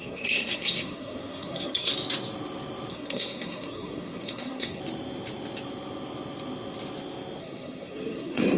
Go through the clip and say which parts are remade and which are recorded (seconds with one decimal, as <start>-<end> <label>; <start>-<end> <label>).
0.0-1.9 remade; 1.9-2.9 recorded; 2.9-4.8 remade; 4.8-7.4 recorded; 7.4-8.6 remade